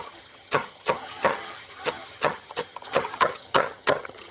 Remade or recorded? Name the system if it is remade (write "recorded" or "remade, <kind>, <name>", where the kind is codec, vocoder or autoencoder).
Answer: remade, vocoder, HiFi-GAN